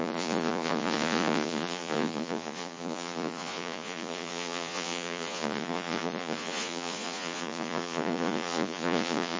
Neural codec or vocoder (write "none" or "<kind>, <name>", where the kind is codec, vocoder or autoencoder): vocoder, Vocos